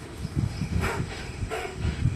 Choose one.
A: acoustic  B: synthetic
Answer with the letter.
B